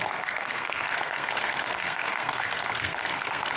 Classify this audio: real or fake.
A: fake